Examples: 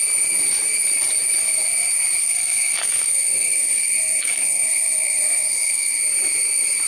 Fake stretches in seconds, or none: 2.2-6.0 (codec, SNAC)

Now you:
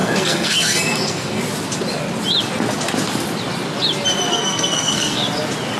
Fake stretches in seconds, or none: 0.0-1.4 (codec, SNAC); 4.3-5.2

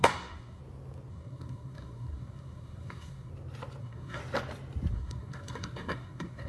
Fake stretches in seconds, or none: 0.0-0.6 (codec, SNAC); 1.1-3.3; 3.8-4.2; 4.9-6.5

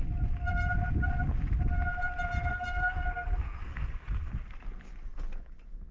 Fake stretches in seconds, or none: 2.5-4.3 (codec, SNAC)